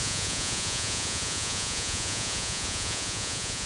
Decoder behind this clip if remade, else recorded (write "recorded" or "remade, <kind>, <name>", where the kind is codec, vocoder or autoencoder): remade, vocoder, Vocos